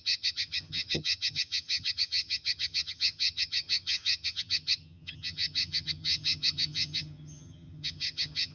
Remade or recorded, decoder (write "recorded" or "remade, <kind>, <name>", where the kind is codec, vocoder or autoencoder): remade, vocoder, HiFi-GAN